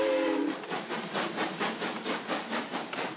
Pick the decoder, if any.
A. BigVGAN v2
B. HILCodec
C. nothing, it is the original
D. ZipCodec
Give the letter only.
A